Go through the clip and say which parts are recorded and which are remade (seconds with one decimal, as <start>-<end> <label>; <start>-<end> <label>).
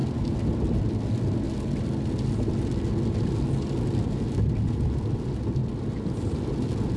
0.0-7.0 recorded